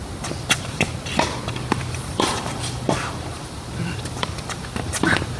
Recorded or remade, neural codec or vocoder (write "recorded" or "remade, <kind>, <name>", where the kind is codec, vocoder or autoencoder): remade, vocoder, BigVGAN v2